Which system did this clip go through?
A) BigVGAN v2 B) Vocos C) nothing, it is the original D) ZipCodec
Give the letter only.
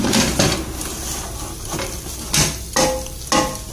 C